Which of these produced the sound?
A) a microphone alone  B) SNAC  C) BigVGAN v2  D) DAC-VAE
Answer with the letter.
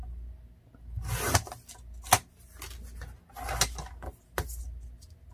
A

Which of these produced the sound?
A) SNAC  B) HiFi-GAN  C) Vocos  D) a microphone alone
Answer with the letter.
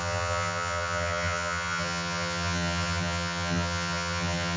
B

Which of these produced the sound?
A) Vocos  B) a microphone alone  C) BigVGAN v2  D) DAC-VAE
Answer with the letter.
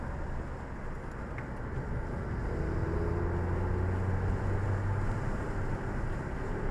B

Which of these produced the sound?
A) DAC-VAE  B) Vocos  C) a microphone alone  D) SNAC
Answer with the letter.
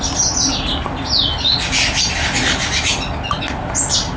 C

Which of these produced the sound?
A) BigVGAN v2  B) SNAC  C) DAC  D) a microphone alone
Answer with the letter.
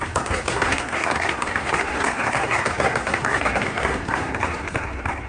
B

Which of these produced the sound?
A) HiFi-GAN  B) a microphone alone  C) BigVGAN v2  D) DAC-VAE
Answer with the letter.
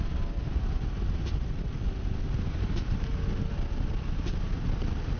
B